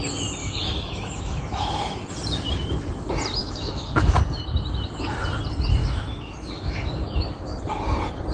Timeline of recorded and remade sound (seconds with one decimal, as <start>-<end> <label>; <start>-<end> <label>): 0.0-0.4 recorded; 0.4-1.9 remade; 1.9-3.4 recorded; 3.4-4.2 remade; 4.2-5.8 recorded; 5.8-7.6 remade; 7.6-8.3 recorded